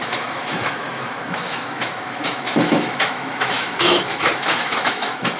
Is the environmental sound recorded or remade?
remade